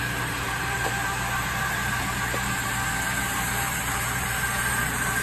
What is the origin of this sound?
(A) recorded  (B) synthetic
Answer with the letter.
B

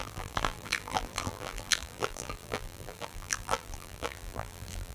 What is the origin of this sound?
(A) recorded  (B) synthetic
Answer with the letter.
B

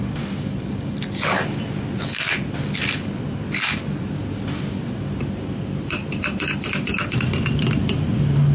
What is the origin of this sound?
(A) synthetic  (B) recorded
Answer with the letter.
B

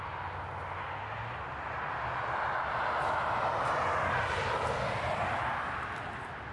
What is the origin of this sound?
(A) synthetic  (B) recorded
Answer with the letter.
B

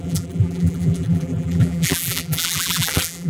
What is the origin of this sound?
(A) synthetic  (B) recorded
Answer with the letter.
A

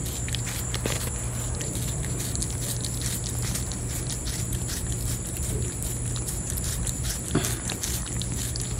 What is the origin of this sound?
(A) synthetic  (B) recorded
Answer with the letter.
B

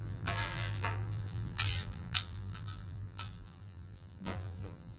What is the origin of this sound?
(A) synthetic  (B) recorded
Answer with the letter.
A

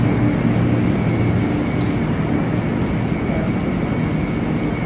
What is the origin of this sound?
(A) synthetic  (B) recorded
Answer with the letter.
B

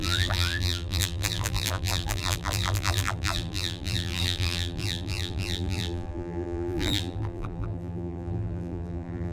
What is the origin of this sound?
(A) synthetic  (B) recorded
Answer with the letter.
A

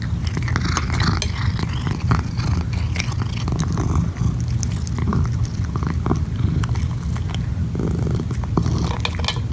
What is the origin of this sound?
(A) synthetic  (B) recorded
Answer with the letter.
B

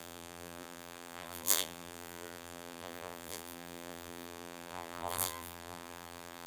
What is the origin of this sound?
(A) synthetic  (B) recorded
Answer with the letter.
A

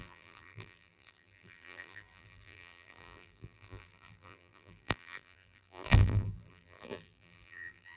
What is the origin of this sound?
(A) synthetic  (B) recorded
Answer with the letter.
A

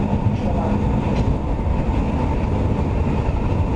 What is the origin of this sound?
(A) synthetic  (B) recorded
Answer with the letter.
B